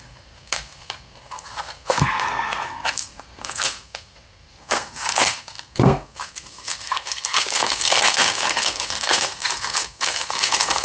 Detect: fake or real fake